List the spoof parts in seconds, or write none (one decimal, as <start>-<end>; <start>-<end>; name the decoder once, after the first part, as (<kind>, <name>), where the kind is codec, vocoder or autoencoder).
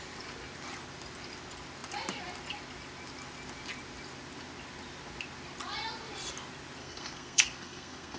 6.8-8.2 (codec, SNAC)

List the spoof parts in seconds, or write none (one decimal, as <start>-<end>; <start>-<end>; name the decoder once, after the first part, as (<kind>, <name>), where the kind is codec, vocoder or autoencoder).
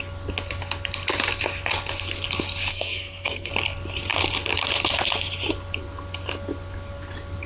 2.7-3.5 (codec, SNAC)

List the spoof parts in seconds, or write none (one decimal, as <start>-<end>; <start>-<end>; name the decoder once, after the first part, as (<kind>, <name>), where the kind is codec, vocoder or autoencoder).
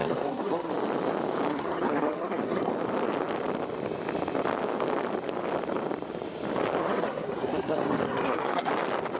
0.0-0.7 (codec, SNAC); 1.5-2.7; 6.8-8.7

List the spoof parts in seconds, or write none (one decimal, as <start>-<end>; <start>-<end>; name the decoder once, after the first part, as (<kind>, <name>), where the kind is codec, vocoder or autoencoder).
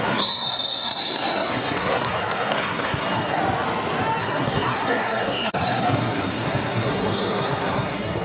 0.0-3.4 (codec, SNAC); 4.2-8.2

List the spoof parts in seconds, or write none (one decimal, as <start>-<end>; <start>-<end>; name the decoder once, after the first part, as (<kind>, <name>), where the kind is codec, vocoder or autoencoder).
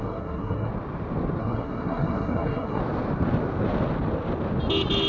0.0-0.7 (codec, SNAC); 1.4-2.8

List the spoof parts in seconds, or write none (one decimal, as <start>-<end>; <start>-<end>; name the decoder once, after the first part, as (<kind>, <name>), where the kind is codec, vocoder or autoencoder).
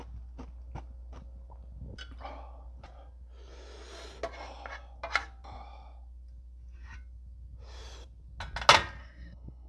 9.0-9.7 (codec, SNAC)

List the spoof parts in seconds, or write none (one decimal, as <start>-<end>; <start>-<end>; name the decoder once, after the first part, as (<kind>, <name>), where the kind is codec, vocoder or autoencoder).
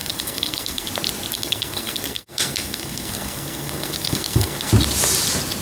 0.0-0.9 (codec, SNAC); 1.3-4.7